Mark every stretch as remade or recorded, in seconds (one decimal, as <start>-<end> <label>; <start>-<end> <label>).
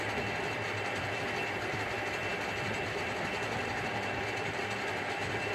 0.0-5.5 recorded